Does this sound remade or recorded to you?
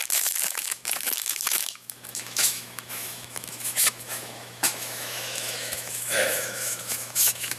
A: remade